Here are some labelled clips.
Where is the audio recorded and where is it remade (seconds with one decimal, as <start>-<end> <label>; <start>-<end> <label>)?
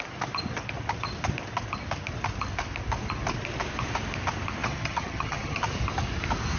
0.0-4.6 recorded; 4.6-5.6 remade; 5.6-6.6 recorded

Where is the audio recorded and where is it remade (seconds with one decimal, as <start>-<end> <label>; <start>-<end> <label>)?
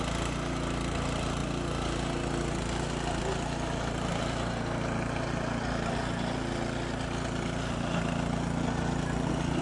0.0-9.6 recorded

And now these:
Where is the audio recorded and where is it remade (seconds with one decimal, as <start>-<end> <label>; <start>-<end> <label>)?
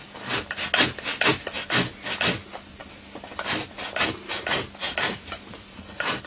0.0-4.8 recorded; 4.8-6.3 remade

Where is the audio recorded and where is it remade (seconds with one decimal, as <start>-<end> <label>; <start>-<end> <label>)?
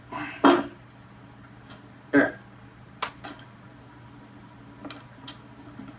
0.0-6.0 recorded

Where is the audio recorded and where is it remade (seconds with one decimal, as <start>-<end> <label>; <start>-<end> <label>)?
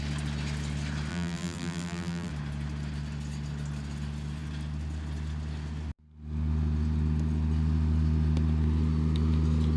0.0-1.1 recorded; 1.1-2.3 remade; 2.3-9.8 recorded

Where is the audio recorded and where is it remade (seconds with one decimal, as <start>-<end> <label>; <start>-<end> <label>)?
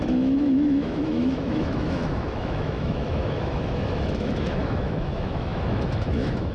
0.0-6.5 remade